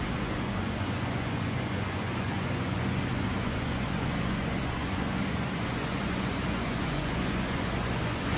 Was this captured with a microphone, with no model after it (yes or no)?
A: no